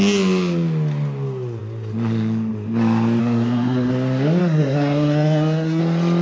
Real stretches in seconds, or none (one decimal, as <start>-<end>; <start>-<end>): 0.0-3.2; 3.9-4.4; 5.8-6.2